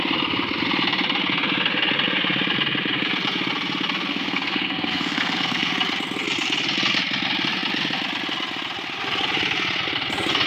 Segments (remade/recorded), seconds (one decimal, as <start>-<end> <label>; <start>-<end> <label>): 0.0-4.1 recorded; 4.1-5.7 remade; 5.7-10.5 recorded